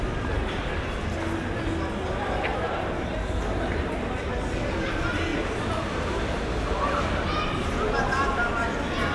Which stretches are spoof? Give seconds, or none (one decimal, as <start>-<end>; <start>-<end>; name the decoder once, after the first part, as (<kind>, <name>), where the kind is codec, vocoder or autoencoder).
2.5-4.1 (vocoder, BigVGAN v2)